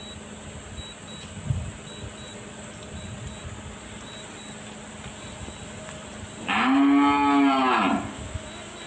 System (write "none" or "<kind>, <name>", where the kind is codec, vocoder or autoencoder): none